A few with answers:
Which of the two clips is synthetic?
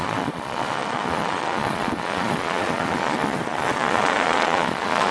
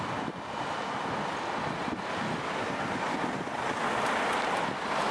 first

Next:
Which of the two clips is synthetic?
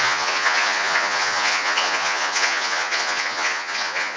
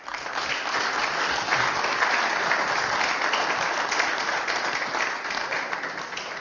first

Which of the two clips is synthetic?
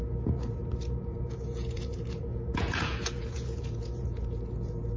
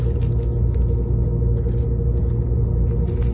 first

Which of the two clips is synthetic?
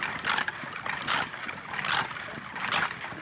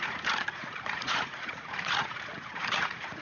second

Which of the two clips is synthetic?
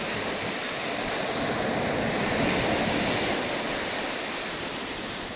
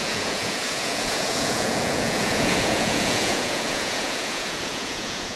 second